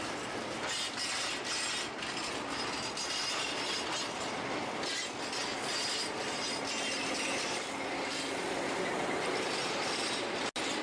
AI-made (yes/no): no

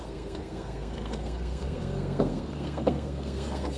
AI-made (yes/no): yes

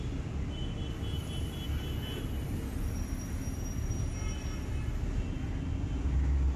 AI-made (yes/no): no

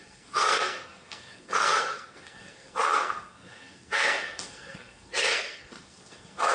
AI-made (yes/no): yes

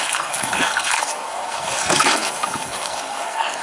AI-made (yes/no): yes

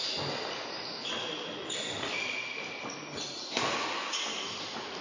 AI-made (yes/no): no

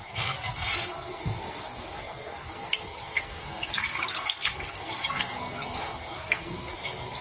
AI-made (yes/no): yes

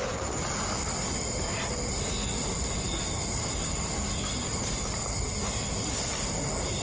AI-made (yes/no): no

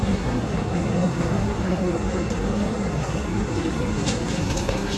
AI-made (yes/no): yes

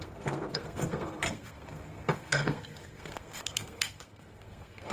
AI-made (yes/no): yes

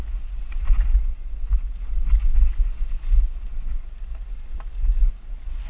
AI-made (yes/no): no